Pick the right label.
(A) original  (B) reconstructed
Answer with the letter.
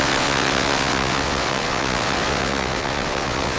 B